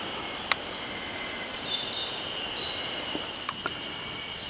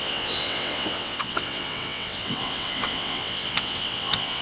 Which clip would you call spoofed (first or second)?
second